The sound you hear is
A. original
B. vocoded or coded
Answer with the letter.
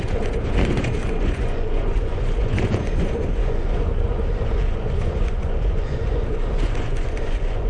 B